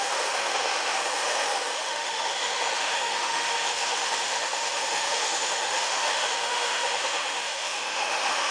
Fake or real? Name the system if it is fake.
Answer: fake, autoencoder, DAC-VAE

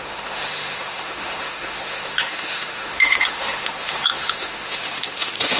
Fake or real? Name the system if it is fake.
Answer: fake, autoencoder, DAC-VAE